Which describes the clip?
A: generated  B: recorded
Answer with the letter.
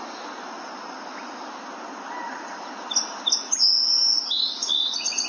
B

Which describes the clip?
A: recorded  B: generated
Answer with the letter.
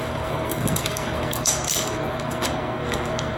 B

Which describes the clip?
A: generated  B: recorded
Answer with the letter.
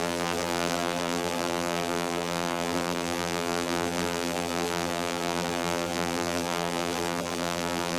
A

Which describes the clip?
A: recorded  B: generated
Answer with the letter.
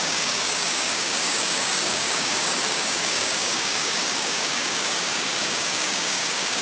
B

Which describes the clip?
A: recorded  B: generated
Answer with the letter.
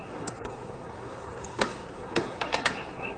B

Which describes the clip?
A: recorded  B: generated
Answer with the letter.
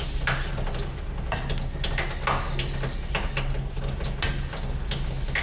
A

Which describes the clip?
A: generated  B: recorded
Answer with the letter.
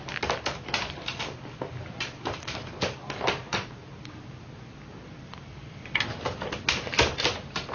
B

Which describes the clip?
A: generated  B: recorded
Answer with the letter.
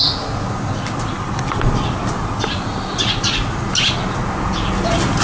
B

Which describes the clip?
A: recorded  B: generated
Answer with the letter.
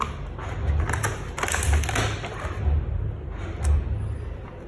A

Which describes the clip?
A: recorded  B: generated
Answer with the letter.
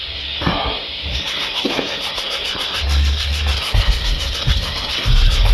B